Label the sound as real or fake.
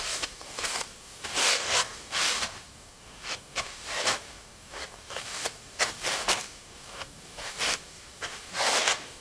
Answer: fake